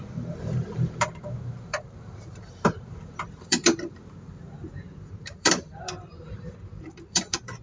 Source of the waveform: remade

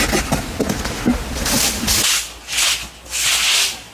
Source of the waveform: recorded